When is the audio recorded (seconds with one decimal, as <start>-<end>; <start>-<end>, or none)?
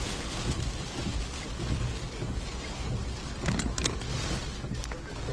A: 0.0-5.3